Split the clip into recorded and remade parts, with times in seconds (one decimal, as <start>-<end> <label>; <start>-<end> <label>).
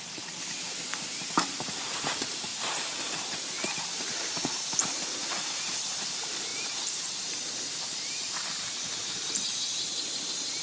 0.0-10.6 remade